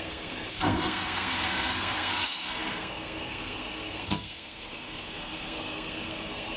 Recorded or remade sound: remade